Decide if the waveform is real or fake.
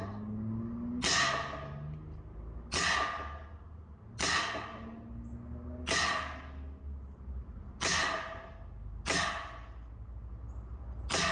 real